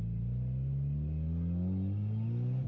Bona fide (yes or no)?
yes